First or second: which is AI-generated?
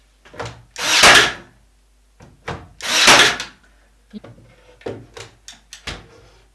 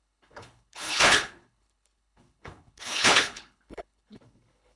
second